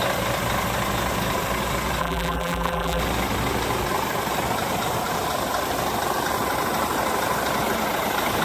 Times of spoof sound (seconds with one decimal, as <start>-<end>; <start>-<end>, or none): 2.0-3.0